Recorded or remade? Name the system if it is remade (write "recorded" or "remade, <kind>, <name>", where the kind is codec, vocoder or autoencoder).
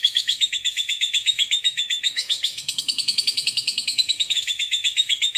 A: remade, autoencoder, DAC-VAE